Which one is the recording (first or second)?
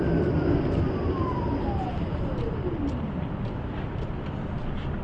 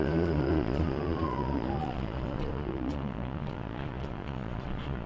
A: first